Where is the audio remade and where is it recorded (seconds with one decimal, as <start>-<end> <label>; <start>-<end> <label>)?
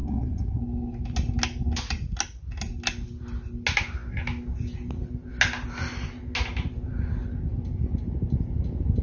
0.0-0.6 remade; 0.6-9.0 recorded